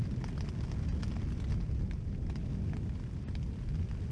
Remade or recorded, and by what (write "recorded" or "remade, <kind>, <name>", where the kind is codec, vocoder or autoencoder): recorded